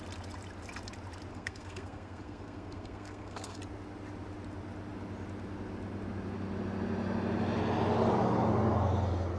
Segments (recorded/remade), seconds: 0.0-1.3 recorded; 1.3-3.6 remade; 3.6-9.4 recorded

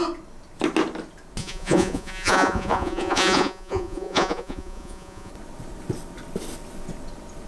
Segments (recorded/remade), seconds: 0.0-1.4 recorded; 1.4-5.3 remade; 5.3-7.5 recorded

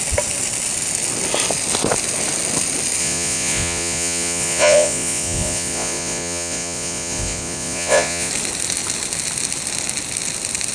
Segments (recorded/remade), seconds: 0.0-3.0 recorded; 3.0-8.3 remade; 8.3-10.7 recorded

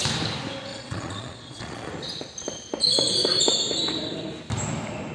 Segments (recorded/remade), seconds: 0.0-0.7 recorded; 0.7-1.9 remade; 1.9-5.1 recorded

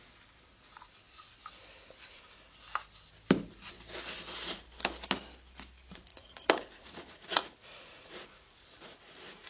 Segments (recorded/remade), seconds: 0.0-6.1 recorded; 6.1-9.5 remade